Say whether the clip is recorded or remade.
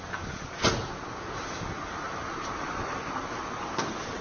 recorded